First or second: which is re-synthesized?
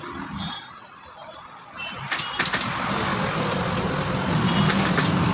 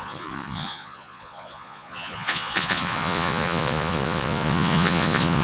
second